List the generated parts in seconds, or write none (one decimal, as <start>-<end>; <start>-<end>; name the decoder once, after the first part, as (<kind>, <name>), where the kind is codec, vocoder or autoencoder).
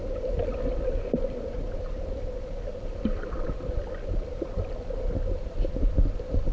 none